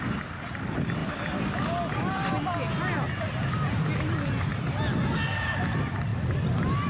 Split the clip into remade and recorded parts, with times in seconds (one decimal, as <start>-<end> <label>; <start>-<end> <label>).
0.0-6.9 recorded